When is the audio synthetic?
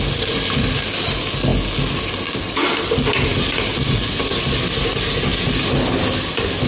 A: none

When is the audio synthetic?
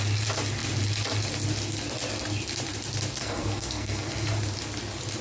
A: 3.2-4.3 (codec, SNAC)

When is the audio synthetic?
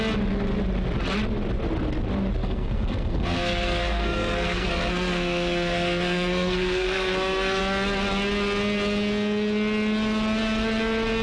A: 2.4-7.6 (codec, SNAC)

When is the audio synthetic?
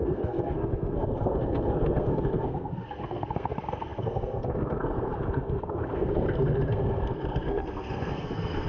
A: 0.0-8.7 (codec, SNAC)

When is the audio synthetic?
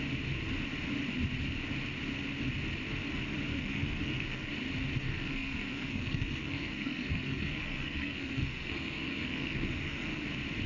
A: 3.5-4.5 (codec, SNAC); 5.0-10.2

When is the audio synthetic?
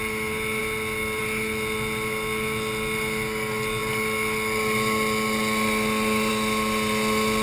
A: none